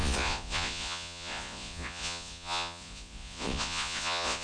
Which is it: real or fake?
fake